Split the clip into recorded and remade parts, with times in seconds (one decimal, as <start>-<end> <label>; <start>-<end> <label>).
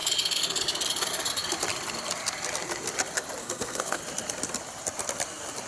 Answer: 0.0-3.4 recorded; 3.4-4.0 remade; 4.0-5.7 recorded